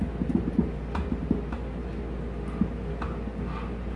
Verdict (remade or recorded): recorded